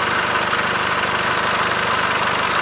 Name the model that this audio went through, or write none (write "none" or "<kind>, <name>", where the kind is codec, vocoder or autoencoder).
none